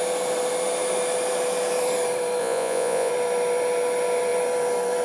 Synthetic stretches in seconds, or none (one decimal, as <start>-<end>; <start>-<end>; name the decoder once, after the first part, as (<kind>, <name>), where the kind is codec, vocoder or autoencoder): 2.4-3.1 (vocoder, Vocos)